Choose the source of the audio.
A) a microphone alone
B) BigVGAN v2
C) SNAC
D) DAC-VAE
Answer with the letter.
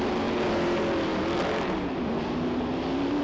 A